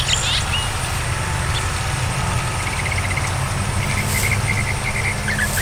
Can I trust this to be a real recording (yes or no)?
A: yes